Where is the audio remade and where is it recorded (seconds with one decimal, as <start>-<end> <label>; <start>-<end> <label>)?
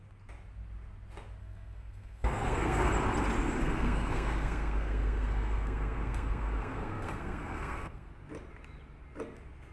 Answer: 0.0-1.4 recorded; 1.4-2.9 remade; 2.9-3.6 recorded; 3.6-8.1 remade; 8.1-9.7 recorded